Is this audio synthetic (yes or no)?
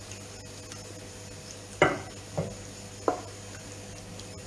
no